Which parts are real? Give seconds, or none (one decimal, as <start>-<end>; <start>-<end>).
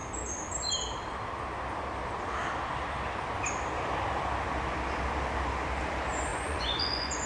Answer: 0.0-6.3